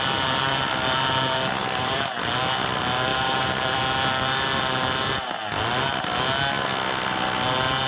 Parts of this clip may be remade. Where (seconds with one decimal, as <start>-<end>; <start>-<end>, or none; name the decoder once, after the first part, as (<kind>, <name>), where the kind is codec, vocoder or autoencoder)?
1.6-2.2 (vocoder, BigVGAN v2); 3.1-3.8